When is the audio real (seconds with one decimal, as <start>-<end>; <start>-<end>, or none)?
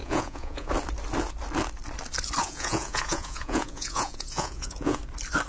0.7-2.4; 5.0-5.5